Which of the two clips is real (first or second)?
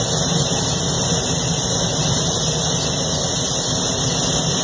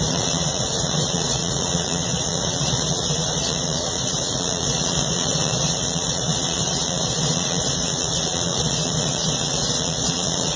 first